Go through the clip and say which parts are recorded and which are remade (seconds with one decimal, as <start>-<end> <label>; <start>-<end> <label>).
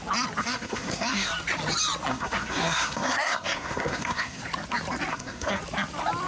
0.0-0.4 recorded; 0.4-1.3 remade; 1.3-2.1 recorded; 2.1-4.4 remade; 4.4-5.1 recorded; 5.1-5.6 remade; 5.6-6.3 recorded